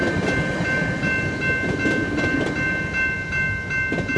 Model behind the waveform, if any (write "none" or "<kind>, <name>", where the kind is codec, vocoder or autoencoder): none